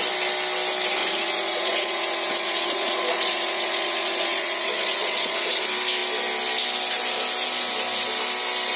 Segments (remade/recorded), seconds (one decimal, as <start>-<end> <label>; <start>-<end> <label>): 0.0-1.0 recorded; 1.0-5.6 remade; 5.6-8.8 recorded